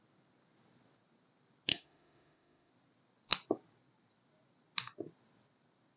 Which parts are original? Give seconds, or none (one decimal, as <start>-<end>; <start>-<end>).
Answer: 0.0-1.7; 2.7-6.0